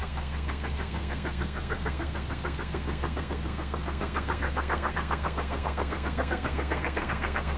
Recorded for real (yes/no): no